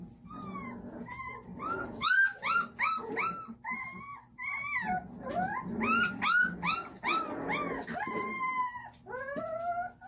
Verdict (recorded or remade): recorded